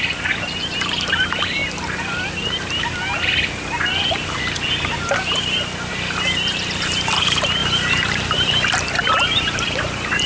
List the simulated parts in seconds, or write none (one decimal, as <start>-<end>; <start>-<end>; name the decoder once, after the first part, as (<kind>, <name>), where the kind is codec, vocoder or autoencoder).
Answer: 0.0-1.6 (vocoder, BigVGAN v2); 5.9-10.3